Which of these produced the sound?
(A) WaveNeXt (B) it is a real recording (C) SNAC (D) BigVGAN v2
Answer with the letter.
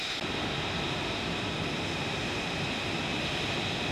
B